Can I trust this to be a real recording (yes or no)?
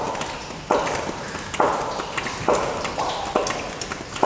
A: yes